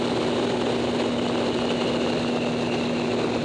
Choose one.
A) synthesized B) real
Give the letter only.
B